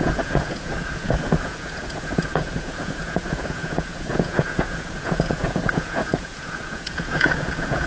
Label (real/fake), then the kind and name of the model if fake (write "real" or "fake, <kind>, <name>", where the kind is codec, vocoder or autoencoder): fake, vocoder, Vocos